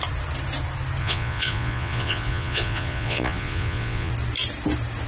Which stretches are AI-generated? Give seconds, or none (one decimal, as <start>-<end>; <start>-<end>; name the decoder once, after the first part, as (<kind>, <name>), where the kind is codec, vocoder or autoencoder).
1.0-4.1 (vocoder, Vocos)